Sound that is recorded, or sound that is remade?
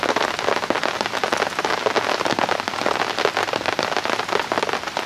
recorded